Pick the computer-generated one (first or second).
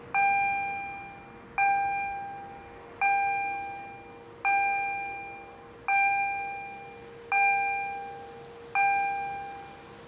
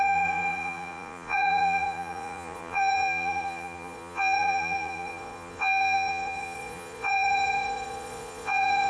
second